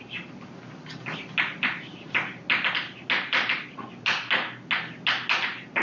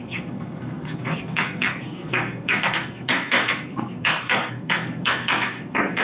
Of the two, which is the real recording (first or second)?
first